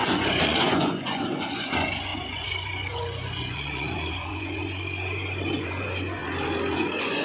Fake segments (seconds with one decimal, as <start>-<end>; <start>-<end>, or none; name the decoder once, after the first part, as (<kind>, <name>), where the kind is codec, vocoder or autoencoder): 0.0-6.2 (vocoder, Vocos); 6.7-7.2